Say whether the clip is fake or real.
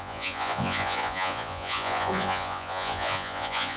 fake